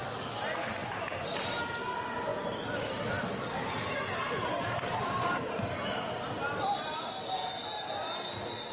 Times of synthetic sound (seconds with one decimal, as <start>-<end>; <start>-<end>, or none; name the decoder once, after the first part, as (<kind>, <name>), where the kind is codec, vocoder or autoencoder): 0.8-1.3 (vocoder, BigVGAN v2)